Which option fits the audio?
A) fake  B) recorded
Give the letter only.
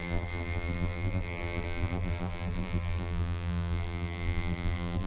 A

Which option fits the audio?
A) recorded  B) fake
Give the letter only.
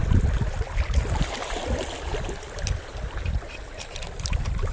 B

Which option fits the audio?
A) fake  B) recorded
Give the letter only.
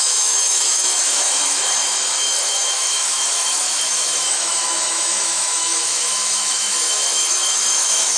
A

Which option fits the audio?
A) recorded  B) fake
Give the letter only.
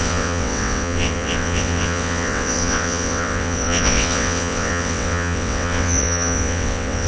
B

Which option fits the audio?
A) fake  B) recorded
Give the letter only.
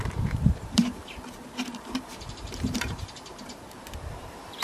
A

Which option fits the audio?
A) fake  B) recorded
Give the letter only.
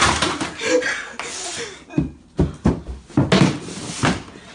B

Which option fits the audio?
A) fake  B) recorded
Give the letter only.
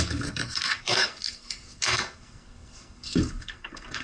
A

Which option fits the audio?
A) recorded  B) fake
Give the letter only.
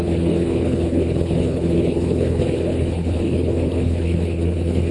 B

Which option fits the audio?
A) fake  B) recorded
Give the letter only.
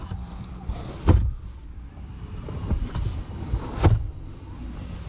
A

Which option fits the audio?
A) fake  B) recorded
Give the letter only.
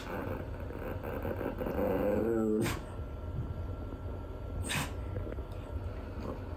B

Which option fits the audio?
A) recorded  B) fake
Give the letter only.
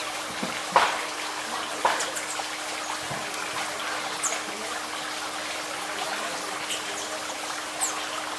A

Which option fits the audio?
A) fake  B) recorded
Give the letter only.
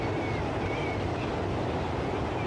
B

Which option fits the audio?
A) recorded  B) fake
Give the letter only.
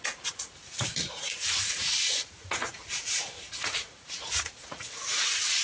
B